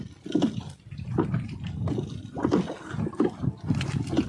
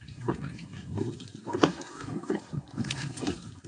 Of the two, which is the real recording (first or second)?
first